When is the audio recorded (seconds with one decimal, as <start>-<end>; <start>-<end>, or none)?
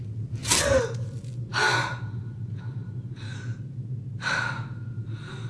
0.0-5.5